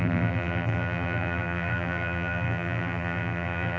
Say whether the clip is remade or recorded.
remade